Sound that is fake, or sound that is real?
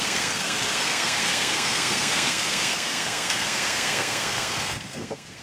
fake